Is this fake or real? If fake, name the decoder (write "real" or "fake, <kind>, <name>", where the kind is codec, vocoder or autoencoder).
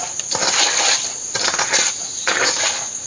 real